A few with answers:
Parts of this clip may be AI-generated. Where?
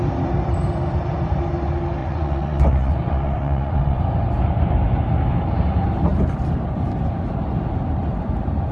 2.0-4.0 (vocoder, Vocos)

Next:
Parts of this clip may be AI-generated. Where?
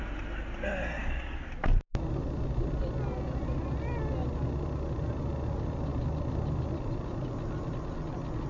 none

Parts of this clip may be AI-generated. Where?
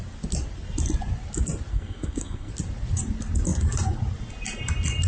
1.7-2.5 (codec, SNAC)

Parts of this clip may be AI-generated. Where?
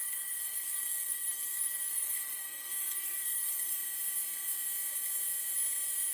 0.0-3.7 (codec, SNAC)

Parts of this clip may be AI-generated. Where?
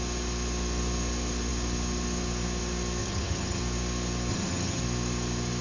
3.0-3.6 (vocoder, HiFi-GAN); 4.3-4.8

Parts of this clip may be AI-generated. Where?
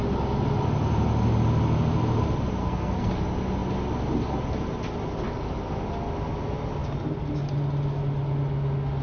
2.6-3.1 (codec, SNAC)